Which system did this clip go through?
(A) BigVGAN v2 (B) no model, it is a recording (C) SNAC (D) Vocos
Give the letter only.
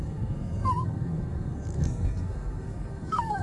C